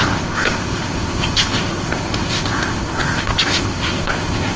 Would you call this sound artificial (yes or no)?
yes